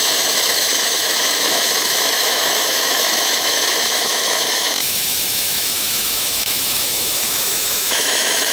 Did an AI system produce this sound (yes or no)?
yes